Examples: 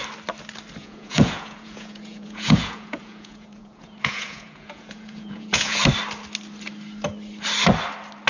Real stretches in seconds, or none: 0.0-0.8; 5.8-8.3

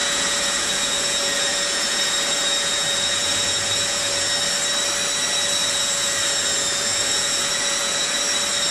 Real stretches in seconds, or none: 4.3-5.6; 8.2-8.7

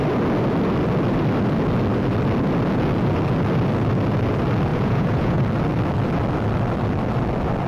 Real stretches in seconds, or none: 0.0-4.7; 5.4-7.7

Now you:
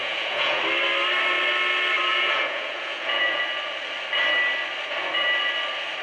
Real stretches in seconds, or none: 0.6-2.1; 3.4-6.0